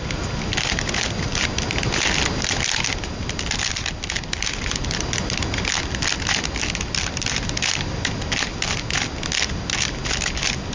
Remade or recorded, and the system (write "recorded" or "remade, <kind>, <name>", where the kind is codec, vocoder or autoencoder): recorded